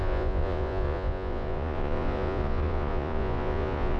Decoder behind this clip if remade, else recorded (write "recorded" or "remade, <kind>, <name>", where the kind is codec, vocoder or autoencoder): remade, vocoder, Vocos